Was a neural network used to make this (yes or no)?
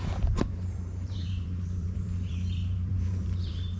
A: yes